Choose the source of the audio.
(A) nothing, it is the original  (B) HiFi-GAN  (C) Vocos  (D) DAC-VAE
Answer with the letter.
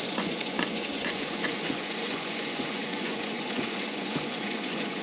C